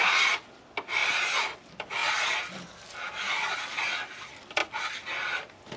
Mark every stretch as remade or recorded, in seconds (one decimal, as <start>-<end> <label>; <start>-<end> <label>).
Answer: 0.0-5.8 recorded